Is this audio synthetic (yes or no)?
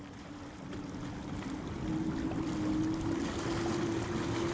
no